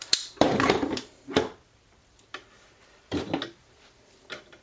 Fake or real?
fake